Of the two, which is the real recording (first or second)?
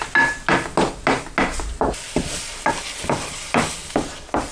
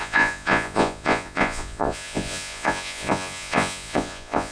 first